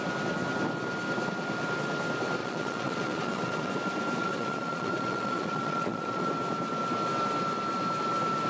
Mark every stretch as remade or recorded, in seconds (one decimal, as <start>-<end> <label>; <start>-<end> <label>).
0.0-2.4 recorded; 2.4-3.7 remade; 3.7-4.2 recorded; 4.2-6.3 remade; 6.3-8.5 recorded